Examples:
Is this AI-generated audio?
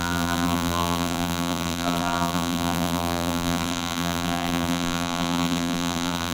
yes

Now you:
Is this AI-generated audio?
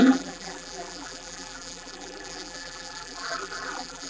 yes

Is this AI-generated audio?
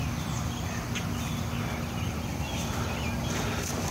no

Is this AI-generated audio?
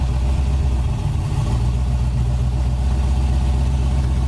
no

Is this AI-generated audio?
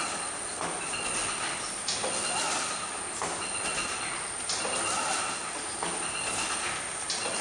no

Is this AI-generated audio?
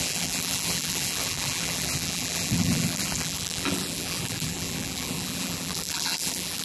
yes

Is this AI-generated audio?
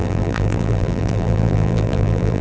yes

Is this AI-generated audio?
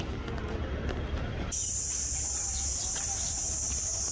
no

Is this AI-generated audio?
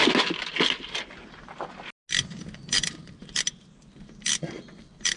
no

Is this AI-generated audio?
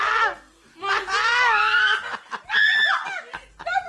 no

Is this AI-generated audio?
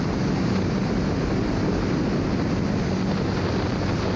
no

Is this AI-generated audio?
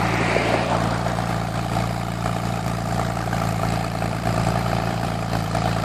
yes